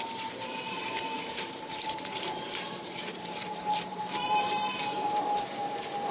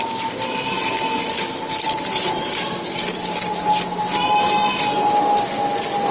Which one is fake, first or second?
first